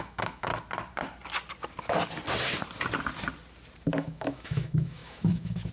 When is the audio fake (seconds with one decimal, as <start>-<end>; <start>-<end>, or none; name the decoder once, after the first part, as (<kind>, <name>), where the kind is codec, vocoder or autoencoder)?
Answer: 0.0-0.5 (autoencoder, DAC-VAE); 3.9-5.7